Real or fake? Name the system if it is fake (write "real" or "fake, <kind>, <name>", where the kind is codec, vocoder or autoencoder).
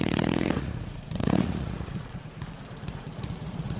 fake, vocoder, Vocos